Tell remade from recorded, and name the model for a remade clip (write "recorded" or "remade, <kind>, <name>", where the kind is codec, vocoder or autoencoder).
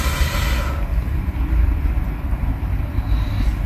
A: recorded